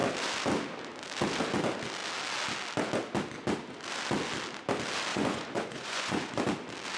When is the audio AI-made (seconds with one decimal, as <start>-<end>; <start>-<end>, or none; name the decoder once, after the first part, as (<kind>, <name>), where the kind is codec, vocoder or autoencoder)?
5.1-6.3 (vocoder, Vocos)